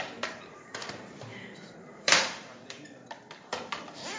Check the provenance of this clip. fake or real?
fake